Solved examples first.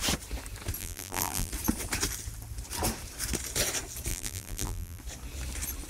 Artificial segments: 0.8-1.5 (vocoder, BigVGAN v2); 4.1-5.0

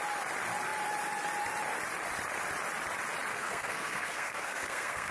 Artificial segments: 3.3-5.1 (codec, SNAC)

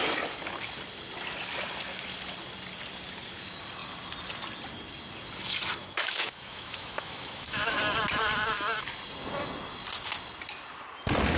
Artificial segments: 5.8-7.8 (autoencoder, DAC-VAE)

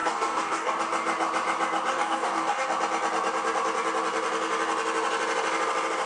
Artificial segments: 0.0-0.8 (codec, DAC); 1.9-2.7

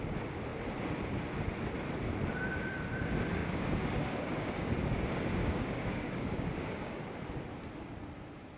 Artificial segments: 3.4-7.0 (codec, DAC)